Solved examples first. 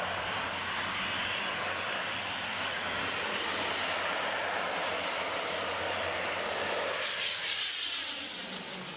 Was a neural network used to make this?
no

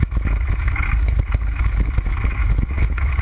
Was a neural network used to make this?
yes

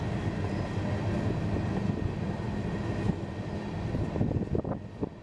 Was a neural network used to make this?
no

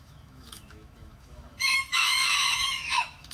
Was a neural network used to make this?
yes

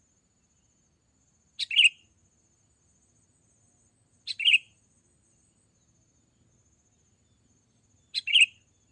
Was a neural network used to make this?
no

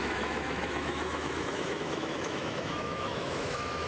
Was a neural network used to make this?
yes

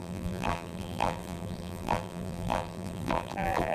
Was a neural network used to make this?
yes